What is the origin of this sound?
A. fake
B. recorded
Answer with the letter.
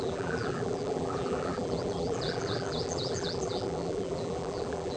A